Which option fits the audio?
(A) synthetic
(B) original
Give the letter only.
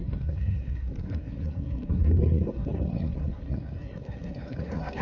A